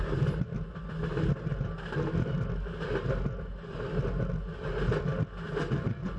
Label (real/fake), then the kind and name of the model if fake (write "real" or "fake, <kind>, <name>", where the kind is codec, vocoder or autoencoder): real